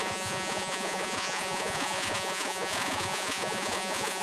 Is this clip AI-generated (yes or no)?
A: yes